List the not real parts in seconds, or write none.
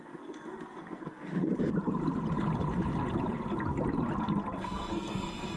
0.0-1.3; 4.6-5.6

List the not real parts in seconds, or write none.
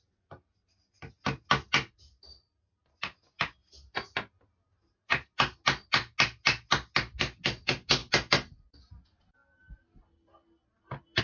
none